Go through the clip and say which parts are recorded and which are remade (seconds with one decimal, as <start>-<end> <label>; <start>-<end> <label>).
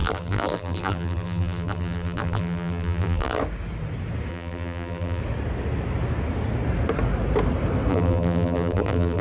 0.0-3.4 remade; 3.4-4.3 recorded; 4.3-5.2 remade; 5.2-7.9 recorded; 7.9-9.2 remade